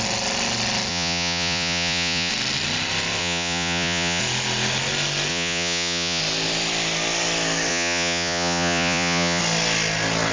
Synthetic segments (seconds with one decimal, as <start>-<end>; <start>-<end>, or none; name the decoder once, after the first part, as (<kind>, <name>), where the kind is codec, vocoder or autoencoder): 0.9-2.3 (vocoder, Vocos); 3.2-4.2; 5.3-6.2; 7.7-9.4